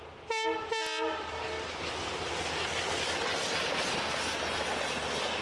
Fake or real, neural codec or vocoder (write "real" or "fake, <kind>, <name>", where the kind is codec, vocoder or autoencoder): real